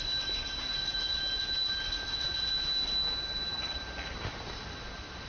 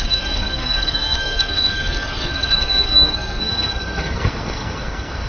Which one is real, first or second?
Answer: first